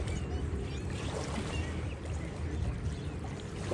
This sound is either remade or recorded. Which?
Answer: recorded